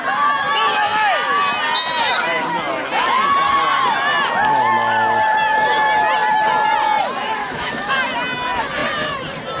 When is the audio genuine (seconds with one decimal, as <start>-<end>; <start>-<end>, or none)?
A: 0.0-7.4; 7.9-9.6